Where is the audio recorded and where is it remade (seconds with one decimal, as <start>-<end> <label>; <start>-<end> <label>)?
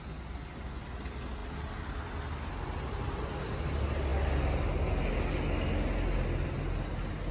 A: 0.0-7.3 recorded